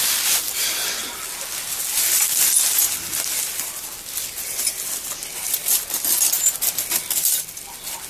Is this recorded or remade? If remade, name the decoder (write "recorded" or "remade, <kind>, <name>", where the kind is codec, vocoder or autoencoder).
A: recorded